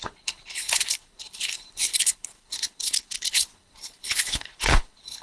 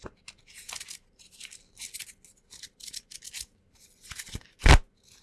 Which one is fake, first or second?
first